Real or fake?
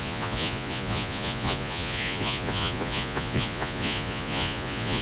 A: fake